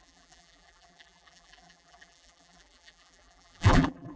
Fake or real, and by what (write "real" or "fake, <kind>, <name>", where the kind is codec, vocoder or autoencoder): fake, vocoder, BigVGAN v2